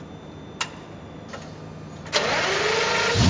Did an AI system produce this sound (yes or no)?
no